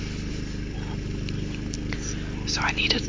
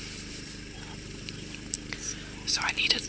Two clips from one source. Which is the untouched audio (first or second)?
first